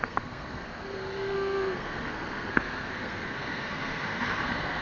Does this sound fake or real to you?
fake